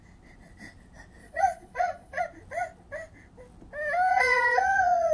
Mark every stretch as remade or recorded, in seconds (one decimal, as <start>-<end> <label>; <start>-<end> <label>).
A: 0.0-1.2 recorded; 1.2-2.2 remade; 2.2-4.1 recorded; 4.1-5.1 remade